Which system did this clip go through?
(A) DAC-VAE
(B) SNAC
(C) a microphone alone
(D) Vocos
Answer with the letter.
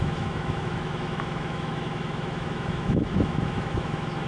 A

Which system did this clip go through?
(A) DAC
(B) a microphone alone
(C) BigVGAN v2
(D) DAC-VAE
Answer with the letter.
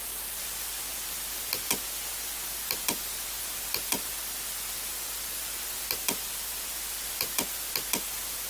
B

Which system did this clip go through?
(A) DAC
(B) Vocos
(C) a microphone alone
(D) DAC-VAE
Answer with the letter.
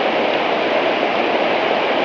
C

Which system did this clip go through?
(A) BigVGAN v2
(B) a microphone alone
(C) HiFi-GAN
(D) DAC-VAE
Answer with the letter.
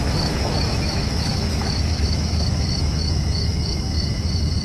D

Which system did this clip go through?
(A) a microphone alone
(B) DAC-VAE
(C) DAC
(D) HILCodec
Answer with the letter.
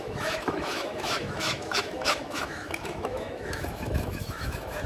B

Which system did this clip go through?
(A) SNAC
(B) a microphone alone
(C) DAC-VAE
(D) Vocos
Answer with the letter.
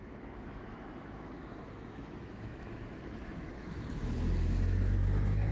C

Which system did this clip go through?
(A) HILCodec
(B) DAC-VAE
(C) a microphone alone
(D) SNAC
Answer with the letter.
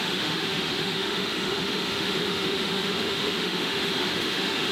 B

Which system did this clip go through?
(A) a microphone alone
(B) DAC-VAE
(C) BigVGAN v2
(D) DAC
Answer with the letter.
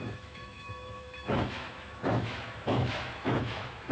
B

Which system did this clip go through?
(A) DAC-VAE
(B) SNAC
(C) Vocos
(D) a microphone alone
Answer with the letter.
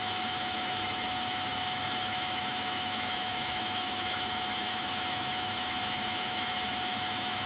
A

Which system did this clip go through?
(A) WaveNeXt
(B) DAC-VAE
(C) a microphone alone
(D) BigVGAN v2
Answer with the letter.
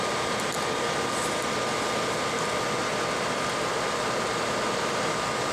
C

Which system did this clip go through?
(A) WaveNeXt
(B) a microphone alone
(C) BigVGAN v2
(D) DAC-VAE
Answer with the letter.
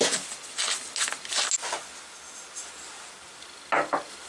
B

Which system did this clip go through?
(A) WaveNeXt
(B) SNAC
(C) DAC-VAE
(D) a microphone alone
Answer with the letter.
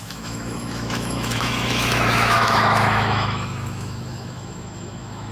C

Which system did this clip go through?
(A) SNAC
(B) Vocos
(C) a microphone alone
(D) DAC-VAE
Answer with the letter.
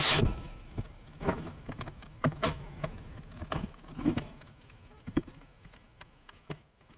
D